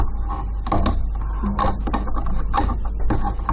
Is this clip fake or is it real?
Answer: real